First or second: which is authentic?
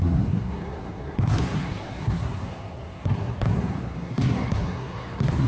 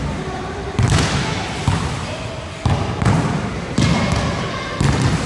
second